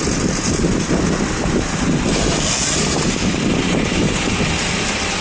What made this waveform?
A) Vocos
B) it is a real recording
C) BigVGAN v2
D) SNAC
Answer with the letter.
B